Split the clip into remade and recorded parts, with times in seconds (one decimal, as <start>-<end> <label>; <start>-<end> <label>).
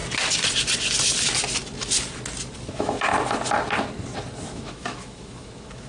0.0-2.7 recorded; 2.7-3.1 remade; 3.1-4.5 recorded; 4.5-5.9 remade